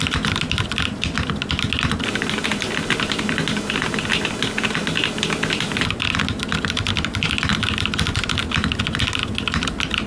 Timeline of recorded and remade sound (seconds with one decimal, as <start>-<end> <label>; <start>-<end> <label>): 0.0-10.1 recorded